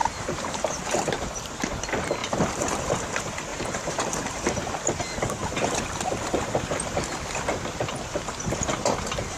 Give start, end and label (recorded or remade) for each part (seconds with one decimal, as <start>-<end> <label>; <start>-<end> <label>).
0.0-1.7 remade; 1.7-2.2 recorded; 2.2-2.9 remade; 2.9-3.5 recorded; 3.5-4.6 remade; 4.6-9.4 recorded